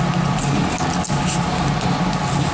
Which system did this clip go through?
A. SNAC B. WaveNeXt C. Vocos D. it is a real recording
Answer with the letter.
D